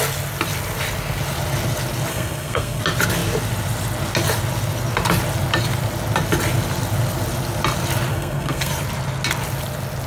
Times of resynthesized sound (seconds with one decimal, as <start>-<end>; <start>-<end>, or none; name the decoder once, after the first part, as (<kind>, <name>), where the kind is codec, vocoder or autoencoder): 2.1-2.8 (codec, SNAC); 8.1-8.7